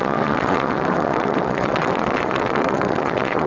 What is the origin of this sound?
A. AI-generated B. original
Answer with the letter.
A